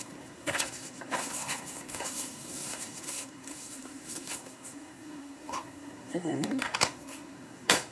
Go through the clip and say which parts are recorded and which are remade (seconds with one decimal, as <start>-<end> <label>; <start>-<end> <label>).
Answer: 0.0-7.9 remade